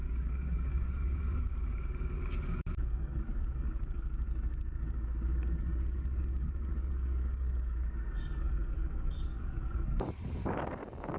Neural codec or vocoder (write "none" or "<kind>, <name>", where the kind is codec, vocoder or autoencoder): codec, DAC